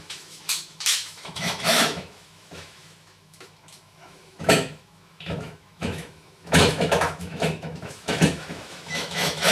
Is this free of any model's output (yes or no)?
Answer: no